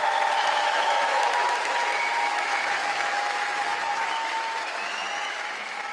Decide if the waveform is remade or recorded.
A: remade